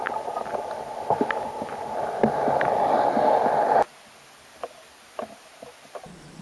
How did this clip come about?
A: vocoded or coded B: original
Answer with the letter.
B